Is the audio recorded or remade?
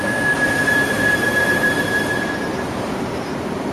remade